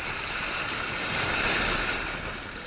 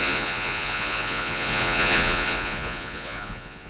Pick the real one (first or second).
first